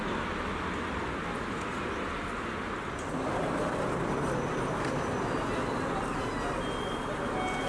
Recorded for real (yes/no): yes